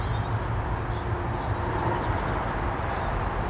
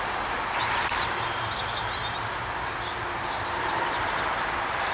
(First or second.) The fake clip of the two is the second